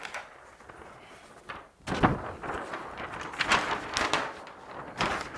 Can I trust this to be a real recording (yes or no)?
yes